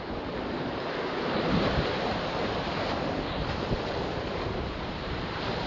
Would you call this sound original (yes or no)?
no